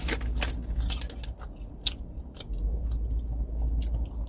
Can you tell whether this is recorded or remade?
recorded